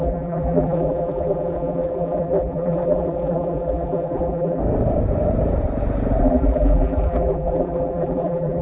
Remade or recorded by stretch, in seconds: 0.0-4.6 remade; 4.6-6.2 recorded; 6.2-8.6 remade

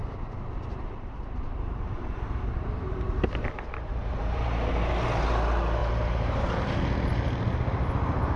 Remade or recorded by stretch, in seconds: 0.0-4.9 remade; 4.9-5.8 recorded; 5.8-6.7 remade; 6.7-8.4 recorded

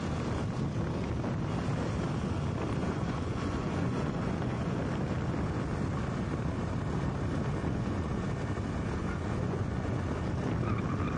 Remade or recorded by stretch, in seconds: 0.0-2.8 recorded; 2.8-4.8 remade; 4.8-7.6 recorded; 7.6-8.2 remade; 8.2-9.0 recorded; 9.0-10.0 remade; 10.0-11.2 recorded

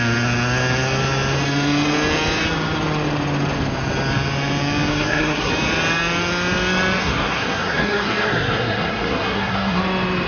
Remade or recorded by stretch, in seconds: 0.0-4.9 recorded; 4.9-5.5 remade; 5.5-7.0 recorded; 7.0-9.8 remade; 9.8-10.3 recorded